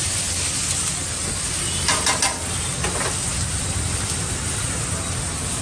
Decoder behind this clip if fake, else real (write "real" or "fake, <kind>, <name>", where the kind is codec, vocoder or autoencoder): real